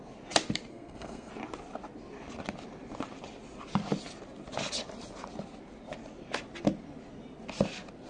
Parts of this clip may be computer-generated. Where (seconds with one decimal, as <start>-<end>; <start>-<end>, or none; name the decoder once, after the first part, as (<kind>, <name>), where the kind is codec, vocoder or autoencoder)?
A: 0.7-1.3 (codec, SNAC)